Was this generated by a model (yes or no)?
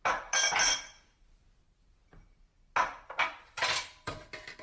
no